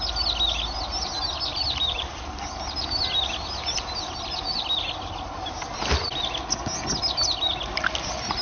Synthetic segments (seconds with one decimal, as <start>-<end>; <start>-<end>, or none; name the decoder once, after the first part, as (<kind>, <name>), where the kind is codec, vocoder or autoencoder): 1.5-2.2 (vocoder, BigVGAN v2)